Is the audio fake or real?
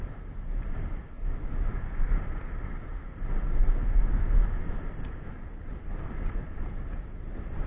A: real